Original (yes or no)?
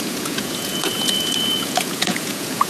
no